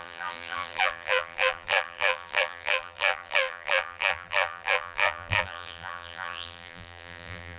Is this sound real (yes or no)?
no